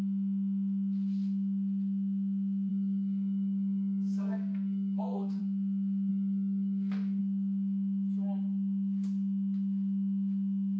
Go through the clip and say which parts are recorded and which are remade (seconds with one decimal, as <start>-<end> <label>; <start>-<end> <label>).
0.0-2.7 recorded; 2.7-5.4 remade; 5.4-6.1 recorded; 6.1-7.2 remade; 7.2-10.8 recorded